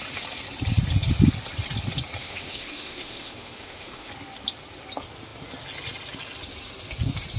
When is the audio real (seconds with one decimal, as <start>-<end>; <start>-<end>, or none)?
0.0-2.2; 4.1-7.4